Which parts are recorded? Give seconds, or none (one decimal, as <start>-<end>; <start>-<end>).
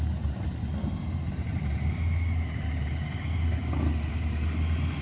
0.0-5.0